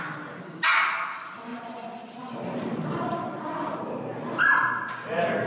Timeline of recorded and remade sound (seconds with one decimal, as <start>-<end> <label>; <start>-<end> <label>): 0.0-1.5 recorded; 1.5-3.8 remade; 3.8-4.5 recorded; 4.5-5.5 remade